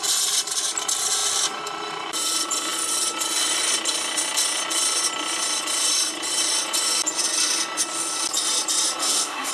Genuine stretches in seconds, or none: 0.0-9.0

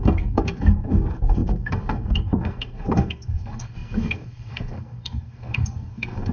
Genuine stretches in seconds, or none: none

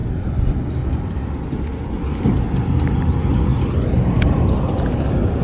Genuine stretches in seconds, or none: 0.0-5.4

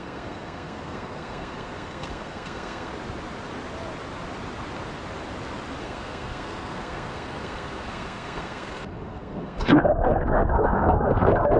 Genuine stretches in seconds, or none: 2.9-5.8

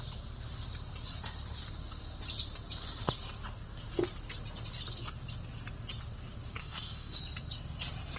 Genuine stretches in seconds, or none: 0.0-6.6; 7.2-8.2

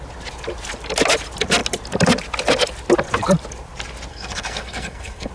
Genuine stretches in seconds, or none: 0.0-4.1

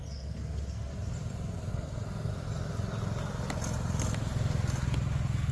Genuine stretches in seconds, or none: 0.9-1.7; 2.3-5.5

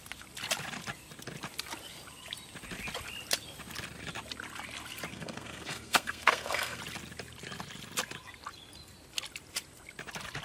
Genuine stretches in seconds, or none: 0.0-5.1; 6.8-10.4